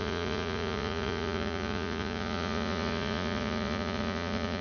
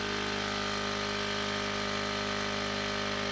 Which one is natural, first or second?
second